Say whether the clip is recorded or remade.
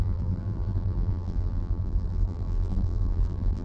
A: remade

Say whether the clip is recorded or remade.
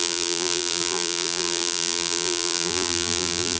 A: remade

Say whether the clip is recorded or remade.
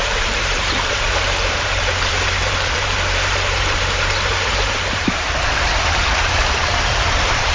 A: remade